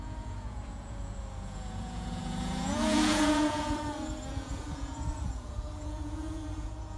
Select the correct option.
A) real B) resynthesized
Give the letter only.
B